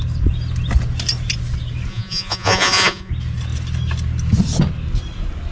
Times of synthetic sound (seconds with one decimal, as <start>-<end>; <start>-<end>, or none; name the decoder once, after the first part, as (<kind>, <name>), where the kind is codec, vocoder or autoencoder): 1.9-3.1 (vocoder, Vocos)